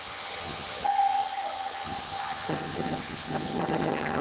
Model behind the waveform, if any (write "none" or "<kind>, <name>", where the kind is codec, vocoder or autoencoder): vocoder, HiFi-GAN